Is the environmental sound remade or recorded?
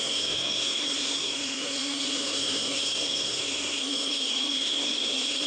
remade